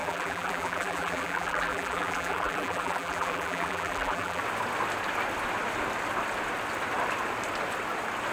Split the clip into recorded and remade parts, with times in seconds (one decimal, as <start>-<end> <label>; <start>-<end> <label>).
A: 0.0-4.4 remade; 4.4-8.3 recorded